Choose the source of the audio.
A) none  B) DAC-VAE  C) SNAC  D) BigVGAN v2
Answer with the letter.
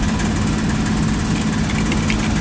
A